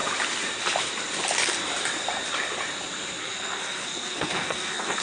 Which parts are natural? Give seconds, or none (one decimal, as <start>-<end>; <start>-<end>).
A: 0.0-3.2